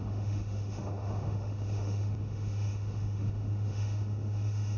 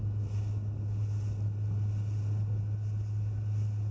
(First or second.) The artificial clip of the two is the first